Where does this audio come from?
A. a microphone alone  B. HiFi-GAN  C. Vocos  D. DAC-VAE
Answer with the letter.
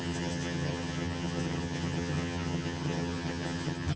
B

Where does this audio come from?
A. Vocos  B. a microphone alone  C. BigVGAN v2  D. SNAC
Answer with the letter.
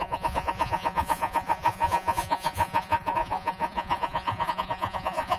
A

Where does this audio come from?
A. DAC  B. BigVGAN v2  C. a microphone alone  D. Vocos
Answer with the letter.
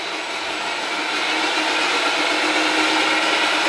C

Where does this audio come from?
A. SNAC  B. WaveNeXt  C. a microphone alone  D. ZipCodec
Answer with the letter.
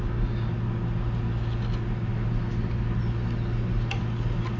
C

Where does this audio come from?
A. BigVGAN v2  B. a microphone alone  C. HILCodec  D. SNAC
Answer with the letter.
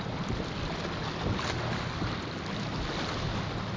B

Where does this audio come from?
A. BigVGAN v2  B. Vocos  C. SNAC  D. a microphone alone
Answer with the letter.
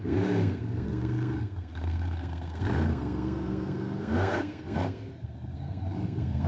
C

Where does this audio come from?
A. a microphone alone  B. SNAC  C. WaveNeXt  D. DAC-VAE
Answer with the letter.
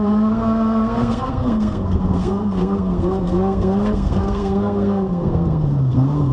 B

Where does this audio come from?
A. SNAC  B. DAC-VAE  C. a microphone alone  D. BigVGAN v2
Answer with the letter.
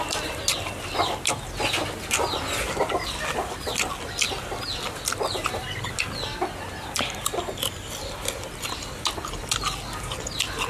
C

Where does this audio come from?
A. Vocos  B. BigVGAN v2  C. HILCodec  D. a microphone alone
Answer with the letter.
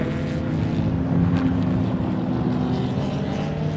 D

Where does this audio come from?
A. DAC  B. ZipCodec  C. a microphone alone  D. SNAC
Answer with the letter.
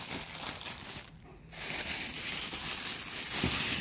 C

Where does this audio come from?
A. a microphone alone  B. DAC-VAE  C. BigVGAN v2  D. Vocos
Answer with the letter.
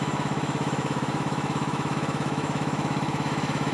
B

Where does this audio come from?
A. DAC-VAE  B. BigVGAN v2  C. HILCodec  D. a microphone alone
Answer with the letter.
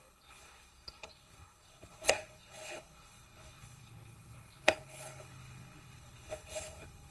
C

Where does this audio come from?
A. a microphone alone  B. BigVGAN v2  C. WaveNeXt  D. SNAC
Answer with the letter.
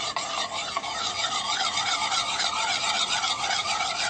A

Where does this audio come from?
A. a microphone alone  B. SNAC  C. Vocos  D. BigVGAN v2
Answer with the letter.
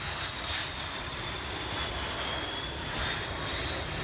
A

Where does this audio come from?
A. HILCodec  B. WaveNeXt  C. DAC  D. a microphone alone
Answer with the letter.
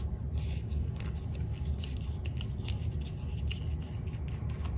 D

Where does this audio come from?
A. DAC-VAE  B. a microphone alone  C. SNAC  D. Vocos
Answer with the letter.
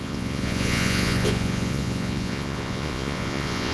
D